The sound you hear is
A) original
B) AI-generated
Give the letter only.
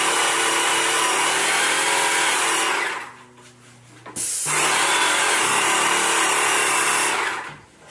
A